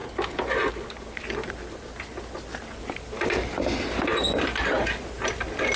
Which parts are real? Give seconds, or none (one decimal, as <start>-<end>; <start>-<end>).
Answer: 0.0-5.8